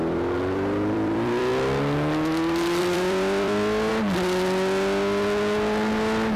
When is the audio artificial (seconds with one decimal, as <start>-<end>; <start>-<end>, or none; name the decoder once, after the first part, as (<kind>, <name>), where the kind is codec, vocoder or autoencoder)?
0.0-1.5 (vocoder, BigVGAN v2); 2.8-3.9